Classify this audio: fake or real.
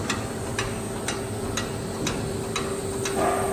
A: real